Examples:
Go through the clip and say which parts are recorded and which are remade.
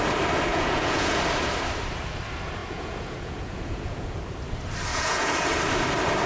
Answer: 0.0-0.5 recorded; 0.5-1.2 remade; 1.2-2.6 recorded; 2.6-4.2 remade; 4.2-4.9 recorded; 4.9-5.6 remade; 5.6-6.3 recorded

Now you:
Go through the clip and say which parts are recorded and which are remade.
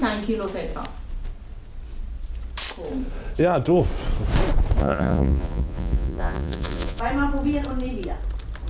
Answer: 0.0-4.8 recorded; 4.8-7.0 remade; 7.0-8.7 recorded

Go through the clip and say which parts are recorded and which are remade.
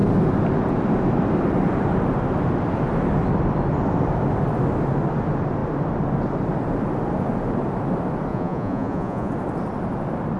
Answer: 0.0-8.3 recorded; 8.3-9.3 remade; 9.3-10.4 recorded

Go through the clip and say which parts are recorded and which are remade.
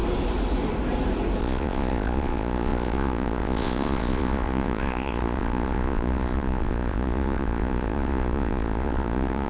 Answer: 0.0-1.4 recorded; 1.4-9.5 remade